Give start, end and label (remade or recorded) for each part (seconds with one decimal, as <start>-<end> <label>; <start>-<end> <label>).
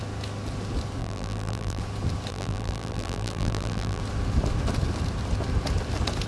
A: 0.0-1.0 recorded; 1.0-1.8 remade; 1.8-2.3 recorded; 2.3-4.0 remade; 4.0-6.3 recorded